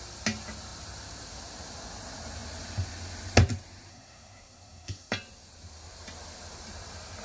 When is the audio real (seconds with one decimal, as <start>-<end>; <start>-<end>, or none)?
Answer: 0.0-3.9; 5.1-7.2